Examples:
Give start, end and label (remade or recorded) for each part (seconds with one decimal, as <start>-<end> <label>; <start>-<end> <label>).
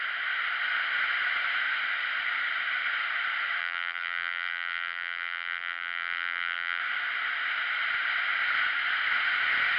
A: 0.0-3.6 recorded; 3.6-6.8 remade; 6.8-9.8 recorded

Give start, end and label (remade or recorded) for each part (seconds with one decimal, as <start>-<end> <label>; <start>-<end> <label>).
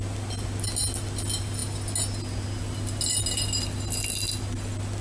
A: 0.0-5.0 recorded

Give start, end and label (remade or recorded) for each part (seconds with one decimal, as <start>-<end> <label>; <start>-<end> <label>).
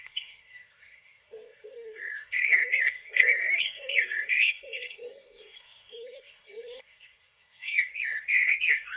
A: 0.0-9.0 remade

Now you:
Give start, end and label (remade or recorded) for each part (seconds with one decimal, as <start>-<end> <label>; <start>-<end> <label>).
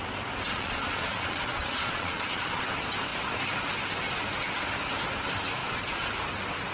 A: 0.0-0.5 recorded; 0.5-2.6 remade; 2.6-5.6 recorded; 5.6-6.1 remade; 6.1-6.7 recorded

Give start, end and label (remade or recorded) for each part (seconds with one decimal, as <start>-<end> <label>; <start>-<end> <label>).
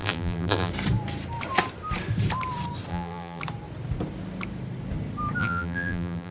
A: 0.0-0.7 remade; 0.7-2.9 recorded; 2.9-3.4 remade; 3.4-5.4 recorded; 5.4-6.3 remade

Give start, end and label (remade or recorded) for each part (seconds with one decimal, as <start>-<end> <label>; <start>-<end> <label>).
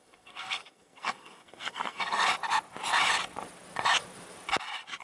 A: 0.0-2.3 remade; 2.3-5.0 recorded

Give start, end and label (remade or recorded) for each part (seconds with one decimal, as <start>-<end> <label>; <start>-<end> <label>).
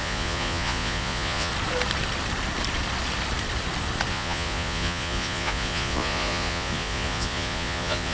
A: 0.0-1.5 remade; 1.5-4.1 recorded; 4.1-8.1 remade